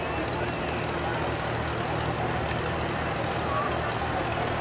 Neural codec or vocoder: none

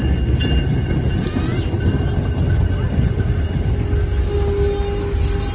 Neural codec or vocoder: none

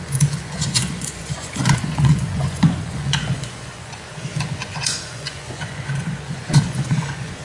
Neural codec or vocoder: vocoder, Vocos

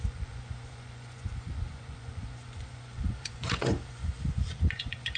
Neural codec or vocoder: vocoder, Vocos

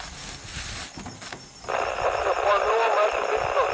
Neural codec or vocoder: none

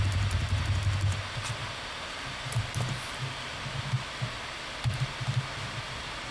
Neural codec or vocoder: vocoder, BigVGAN v2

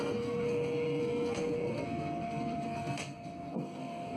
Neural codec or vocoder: codec, SNAC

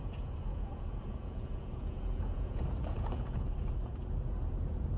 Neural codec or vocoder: vocoder, Vocos